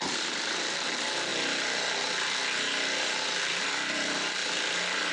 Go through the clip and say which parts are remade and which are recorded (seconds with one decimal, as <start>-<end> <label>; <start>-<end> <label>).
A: 0.0-1.3 remade; 1.3-3.6 recorded; 3.6-4.4 remade; 4.4-5.1 recorded